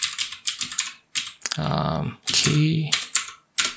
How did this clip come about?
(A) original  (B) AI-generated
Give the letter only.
A